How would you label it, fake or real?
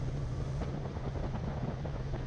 fake